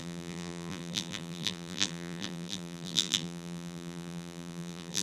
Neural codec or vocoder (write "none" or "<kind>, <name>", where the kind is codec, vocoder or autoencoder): vocoder, BigVGAN v2